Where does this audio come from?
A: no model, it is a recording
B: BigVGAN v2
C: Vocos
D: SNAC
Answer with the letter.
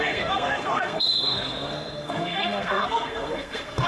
D